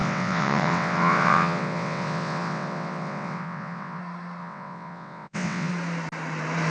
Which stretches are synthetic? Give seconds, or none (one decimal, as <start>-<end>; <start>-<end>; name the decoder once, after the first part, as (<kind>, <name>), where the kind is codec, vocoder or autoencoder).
0.0-4.0 (vocoder, WaveNeXt); 4.4-5.7